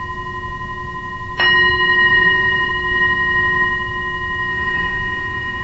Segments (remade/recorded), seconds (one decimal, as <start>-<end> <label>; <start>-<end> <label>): 0.0-2.1 recorded; 2.1-2.7 remade; 2.7-4.5 recorded; 4.5-5.6 remade